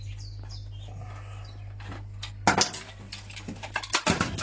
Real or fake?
real